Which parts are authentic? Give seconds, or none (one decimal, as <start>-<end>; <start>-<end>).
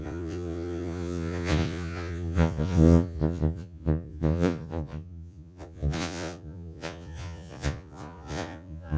none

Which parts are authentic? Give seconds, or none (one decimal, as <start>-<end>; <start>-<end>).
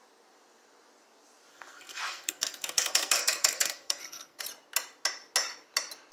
0.0-1.5; 4.4-6.1